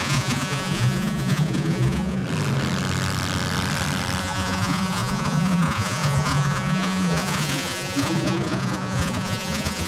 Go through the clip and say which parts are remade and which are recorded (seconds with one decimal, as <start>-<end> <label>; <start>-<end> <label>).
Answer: 0.0-2.2 remade; 2.2-4.2 recorded; 4.2-9.9 remade